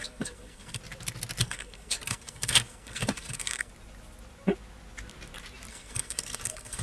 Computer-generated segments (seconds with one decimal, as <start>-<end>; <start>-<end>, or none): 0.0-0.8; 1.4-3.7; 5.7-6.8

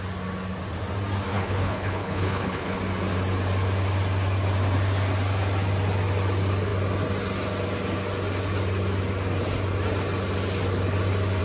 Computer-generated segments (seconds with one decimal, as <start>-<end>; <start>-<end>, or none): 1.3-2.8

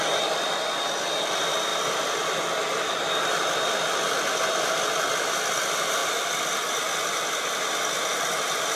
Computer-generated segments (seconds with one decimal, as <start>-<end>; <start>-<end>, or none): none

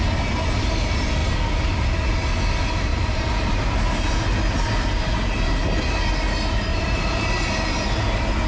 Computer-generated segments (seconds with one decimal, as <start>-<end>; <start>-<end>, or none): 2.9-5.2; 6.7-7.2

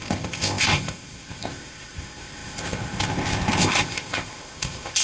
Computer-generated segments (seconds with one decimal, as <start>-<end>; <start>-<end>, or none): 0.0-5.0

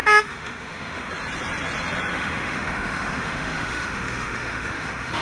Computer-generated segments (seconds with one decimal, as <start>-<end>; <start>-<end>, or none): 0.0-1.1; 2.1-5.2

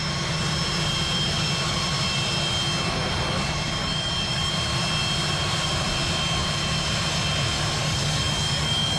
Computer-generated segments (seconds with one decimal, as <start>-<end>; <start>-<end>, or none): 3.8-4.5; 7.8-9.0